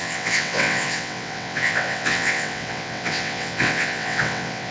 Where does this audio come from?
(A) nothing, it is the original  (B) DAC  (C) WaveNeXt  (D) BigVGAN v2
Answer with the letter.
C